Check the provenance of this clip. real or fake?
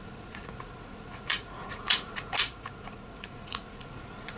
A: fake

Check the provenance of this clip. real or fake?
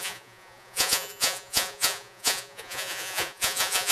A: fake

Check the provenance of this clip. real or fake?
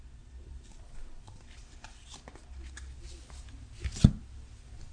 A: real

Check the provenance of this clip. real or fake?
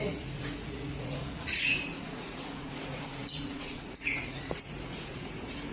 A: fake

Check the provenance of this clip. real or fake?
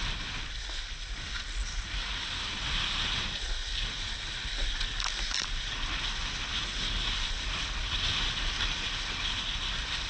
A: real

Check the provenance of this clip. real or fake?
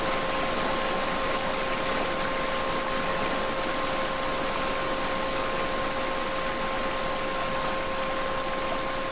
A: real